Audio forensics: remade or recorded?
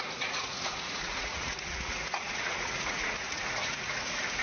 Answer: remade